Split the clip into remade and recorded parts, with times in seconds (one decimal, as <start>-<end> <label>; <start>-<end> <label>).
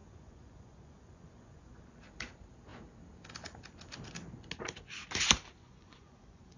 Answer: 0.0-2.0 remade; 2.0-5.6 recorded; 5.6-6.6 remade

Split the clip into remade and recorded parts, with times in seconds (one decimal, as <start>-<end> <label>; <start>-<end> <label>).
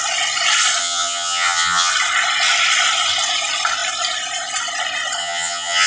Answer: 0.0-0.8 recorded; 0.8-1.9 remade; 1.9-5.2 recorded; 5.2-5.9 remade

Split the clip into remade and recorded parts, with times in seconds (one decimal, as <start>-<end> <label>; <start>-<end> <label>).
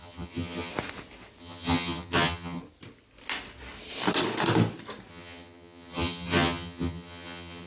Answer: 0.0-0.7 remade; 0.7-1.4 recorded; 1.4-2.6 remade; 2.6-5.1 recorded; 5.1-7.7 remade